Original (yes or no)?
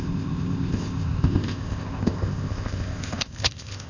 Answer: no